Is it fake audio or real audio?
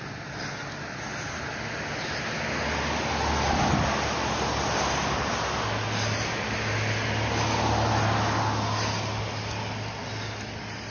real